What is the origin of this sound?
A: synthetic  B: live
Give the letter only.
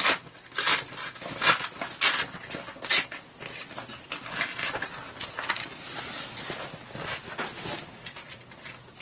B